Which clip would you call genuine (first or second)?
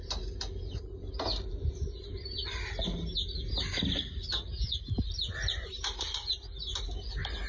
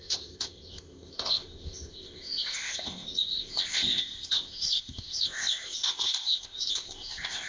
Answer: first